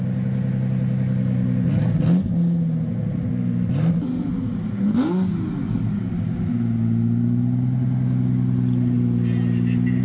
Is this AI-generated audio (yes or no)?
no